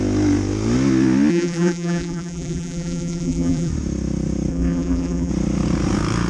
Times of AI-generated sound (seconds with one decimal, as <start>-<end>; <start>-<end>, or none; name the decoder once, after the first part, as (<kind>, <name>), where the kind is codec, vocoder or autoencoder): 1.3-3.7 (vocoder, BigVGAN v2); 4.5-5.3